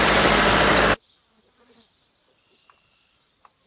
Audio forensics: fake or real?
fake